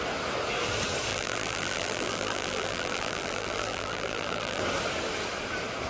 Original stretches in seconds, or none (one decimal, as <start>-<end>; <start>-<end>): 0.0-1.1; 4.6-5.9